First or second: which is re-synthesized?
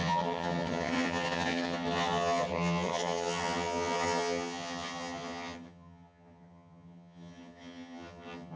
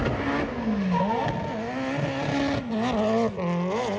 first